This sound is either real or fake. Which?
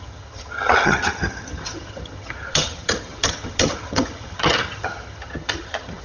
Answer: fake